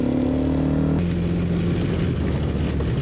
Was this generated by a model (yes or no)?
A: no